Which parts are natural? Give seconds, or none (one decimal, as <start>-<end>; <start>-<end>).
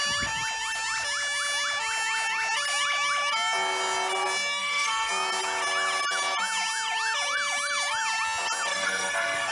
0.0-4.6; 5.1-8.7